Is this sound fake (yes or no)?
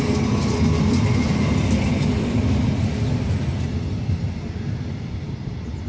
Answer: no